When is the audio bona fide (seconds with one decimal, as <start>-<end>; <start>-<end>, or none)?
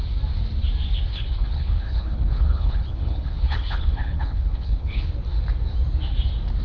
0.0-1.1; 5.1-6.6